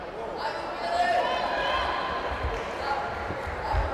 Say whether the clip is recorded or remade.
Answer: recorded